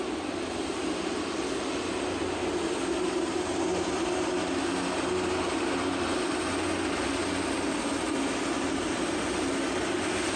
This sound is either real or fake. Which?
real